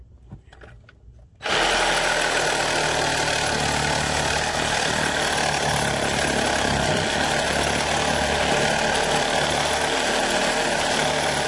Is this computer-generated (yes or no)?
no